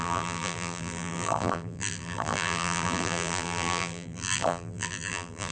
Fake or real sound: fake